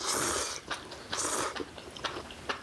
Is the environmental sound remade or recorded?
recorded